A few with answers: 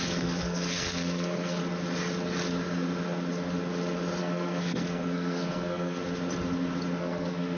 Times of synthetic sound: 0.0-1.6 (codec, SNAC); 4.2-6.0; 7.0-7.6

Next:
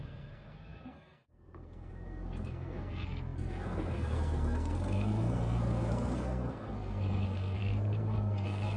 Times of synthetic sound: 0.0-8.8 (codec, SNAC)

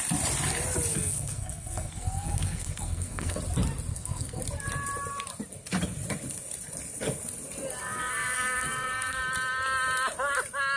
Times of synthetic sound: 0.9-3.4 (codec, SNAC); 3.9-4.4; 7.8-9.2

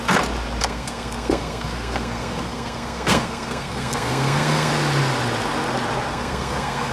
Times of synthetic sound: 0.6-4.7 (codec, SNAC); 6.1-6.9

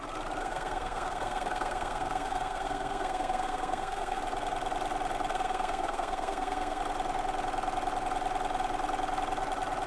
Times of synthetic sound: 0.4-4.2 (codec, SNAC); 5.3-6.8

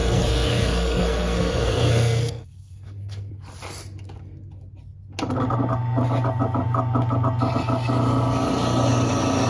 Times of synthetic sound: 0.0-3.3 (codec, SNAC)

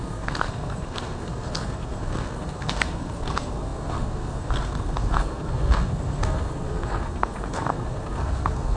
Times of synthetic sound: 0.0-8.8 (codec, SNAC)

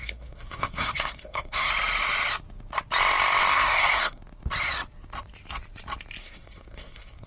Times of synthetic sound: 0.0-1.7 (codec, SNAC); 3.5-4.2; 6.2-7.3